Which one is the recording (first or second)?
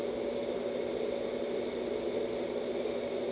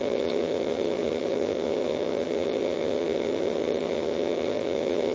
first